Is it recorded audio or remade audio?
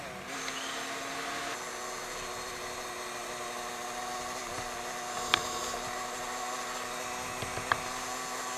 recorded